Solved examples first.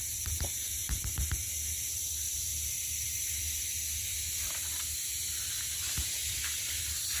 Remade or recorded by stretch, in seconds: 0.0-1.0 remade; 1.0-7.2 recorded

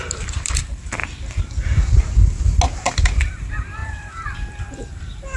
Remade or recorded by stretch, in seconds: 0.0-1.0 remade; 1.0-3.3 recorded; 3.3-5.4 remade

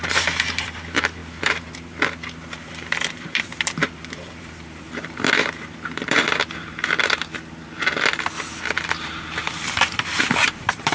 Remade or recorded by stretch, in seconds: 0.0-7.3 remade; 7.3-8.6 recorded; 8.6-10.9 remade

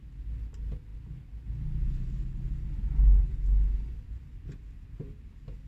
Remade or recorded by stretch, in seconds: 0.0-5.7 recorded